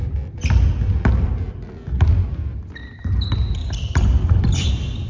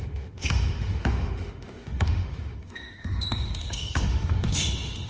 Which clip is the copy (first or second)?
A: second